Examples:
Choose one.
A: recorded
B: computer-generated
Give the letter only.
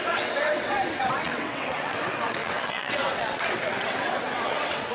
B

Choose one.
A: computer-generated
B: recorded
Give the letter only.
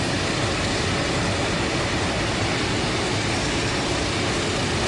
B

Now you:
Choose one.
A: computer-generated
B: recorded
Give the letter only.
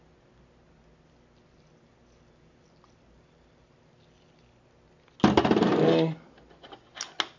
B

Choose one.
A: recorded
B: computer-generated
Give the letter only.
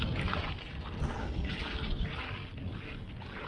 A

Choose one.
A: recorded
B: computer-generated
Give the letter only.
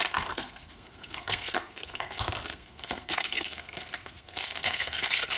B